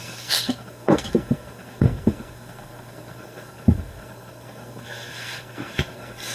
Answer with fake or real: fake